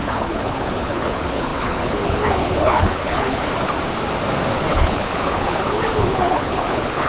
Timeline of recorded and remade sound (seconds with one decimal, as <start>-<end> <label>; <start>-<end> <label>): 0.0-3.5 remade; 3.5-4.7 recorded; 4.7-7.1 remade